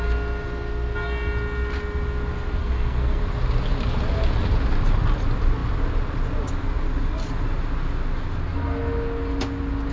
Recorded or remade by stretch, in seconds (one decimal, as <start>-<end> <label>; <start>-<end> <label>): 0.0-2.6 recorded; 2.6-3.2 remade; 3.2-9.9 recorded